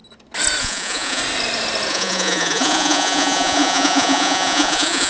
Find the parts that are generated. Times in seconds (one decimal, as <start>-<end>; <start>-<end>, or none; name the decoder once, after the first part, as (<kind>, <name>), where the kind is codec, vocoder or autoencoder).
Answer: 0.6-1.2 (vocoder, Vocos); 1.9-5.1